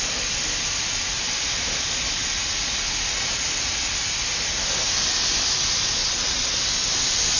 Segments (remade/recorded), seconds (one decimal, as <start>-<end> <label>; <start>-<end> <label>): 0.0-6.0 recorded; 6.0-6.6 remade; 6.6-7.4 recorded